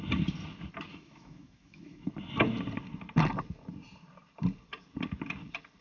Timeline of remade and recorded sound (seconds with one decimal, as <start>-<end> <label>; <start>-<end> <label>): 0.0-0.9 recorded; 0.9-2.1 remade; 2.1-5.8 recorded